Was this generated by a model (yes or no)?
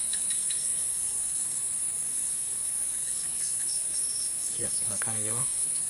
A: yes